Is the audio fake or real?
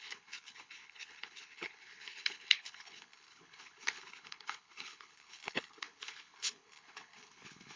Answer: fake